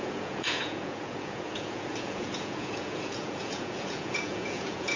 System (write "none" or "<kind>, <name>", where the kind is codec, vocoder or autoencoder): vocoder, Vocos